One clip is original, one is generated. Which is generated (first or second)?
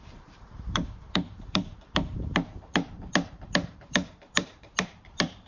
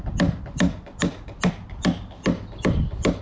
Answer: first